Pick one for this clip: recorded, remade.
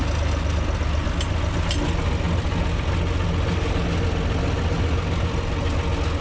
recorded